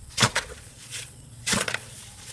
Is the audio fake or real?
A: fake